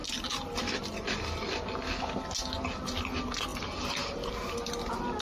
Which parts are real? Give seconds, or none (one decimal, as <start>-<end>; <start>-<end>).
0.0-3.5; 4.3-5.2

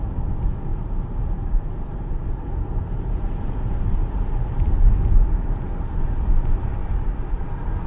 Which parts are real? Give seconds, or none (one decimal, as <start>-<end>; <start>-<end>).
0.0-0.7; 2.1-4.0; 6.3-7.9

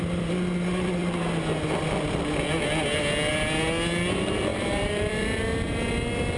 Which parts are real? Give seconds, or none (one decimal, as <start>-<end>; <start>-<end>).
0.0-4.5; 5.4-6.4